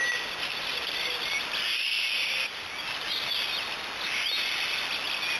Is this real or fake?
real